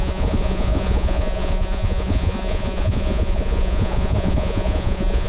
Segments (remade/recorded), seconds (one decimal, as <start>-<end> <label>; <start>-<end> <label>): 0.0-5.3 remade